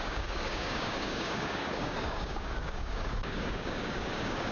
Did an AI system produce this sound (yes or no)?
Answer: yes